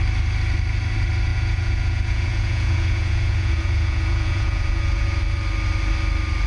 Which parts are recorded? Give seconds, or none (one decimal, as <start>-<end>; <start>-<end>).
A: 0.0-1.3; 5.2-6.5